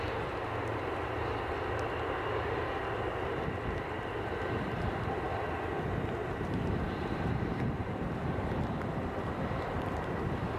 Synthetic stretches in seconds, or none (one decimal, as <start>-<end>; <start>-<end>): 6.2-8.8